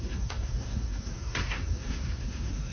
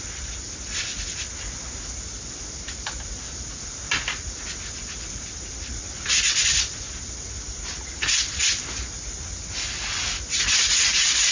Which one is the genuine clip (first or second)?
second